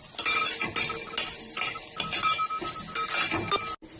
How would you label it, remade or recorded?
recorded